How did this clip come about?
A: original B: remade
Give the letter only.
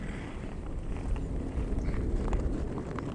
A